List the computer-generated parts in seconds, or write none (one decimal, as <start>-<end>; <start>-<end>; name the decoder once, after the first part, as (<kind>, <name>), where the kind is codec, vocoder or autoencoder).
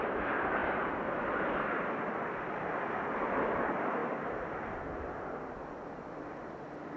0.0-4.0 (vocoder, BigVGAN v2); 5.7-7.0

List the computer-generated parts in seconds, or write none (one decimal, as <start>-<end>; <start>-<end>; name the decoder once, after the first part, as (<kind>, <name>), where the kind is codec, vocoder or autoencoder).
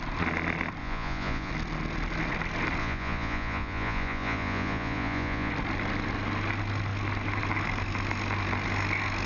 0.8-1.5 (vocoder, Vocos); 2.8-5.5